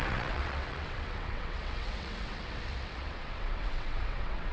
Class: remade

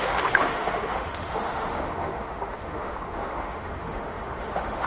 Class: remade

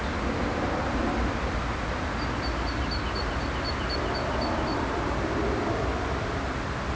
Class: recorded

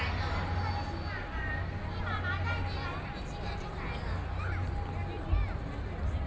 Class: recorded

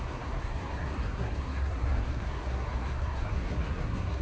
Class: remade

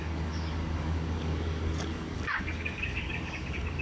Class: remade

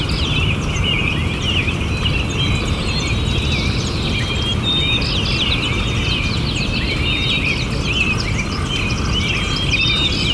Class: recorded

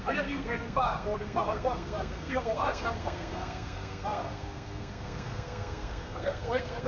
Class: remade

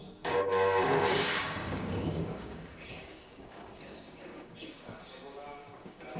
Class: remade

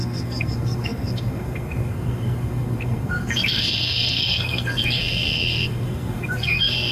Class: remade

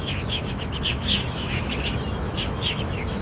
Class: remade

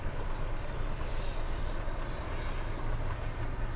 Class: recorded